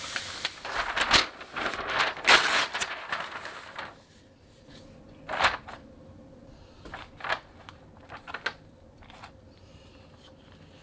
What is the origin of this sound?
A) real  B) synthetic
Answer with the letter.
A